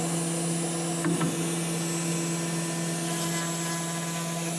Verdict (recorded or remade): recorded